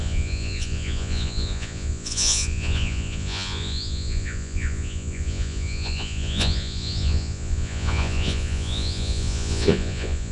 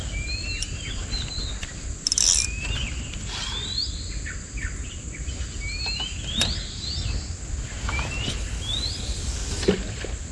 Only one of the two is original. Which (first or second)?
second